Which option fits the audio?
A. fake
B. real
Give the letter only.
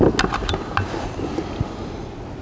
B